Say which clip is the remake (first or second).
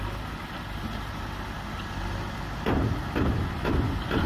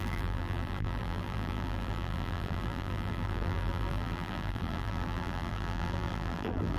second